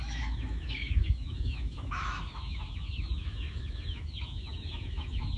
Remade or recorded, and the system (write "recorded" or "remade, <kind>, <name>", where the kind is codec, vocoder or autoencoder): remade, autoencoder, DAC-VAE